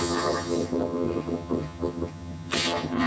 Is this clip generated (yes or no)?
yes